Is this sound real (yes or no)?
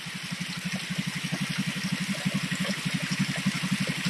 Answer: yes